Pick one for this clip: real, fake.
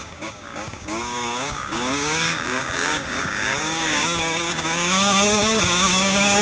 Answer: fake